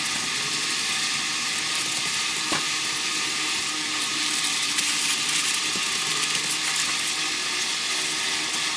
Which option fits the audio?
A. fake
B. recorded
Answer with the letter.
B